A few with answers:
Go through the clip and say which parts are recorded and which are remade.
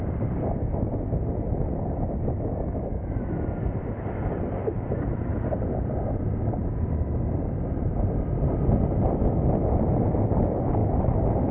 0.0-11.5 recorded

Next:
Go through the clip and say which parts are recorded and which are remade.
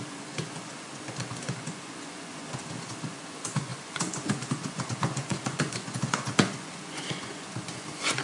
0.0-8.2 remade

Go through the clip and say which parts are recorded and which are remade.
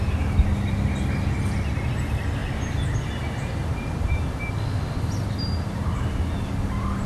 0.0-7.1 recorded